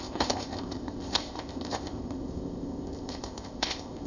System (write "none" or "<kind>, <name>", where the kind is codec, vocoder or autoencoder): codec, ZipCodec